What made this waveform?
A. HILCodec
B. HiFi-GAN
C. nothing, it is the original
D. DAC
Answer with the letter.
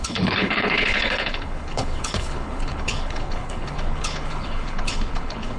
A